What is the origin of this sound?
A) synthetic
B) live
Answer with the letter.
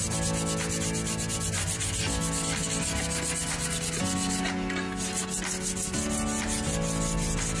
B